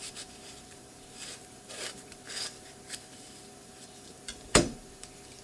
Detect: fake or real fake